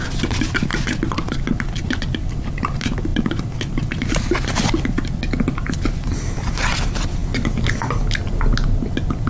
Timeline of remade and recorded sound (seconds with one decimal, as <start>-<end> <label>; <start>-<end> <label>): 0.0-9.3 recorded